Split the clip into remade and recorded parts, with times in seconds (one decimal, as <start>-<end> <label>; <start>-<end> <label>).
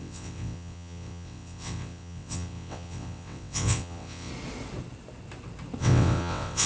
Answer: 0.0-4.3 remade; 4.3-5.8 recorded; 5.8-6.7 remade